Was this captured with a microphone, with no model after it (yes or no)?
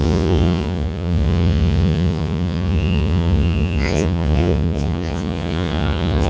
no